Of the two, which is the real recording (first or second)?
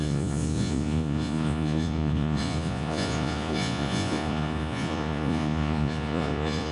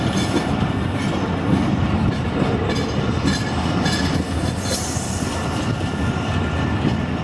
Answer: second